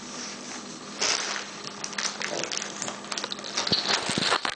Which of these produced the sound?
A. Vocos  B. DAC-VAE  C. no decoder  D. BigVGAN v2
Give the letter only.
C